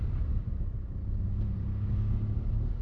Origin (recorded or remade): recorded